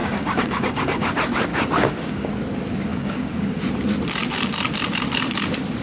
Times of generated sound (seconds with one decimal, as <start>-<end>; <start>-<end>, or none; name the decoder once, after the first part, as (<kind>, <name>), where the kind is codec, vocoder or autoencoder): 0.0-1.1 (codec, DAC); 1.5-2.3; 2.9-3.6